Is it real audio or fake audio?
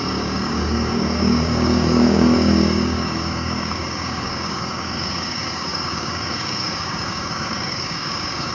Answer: fake